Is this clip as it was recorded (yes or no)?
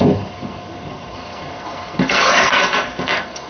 no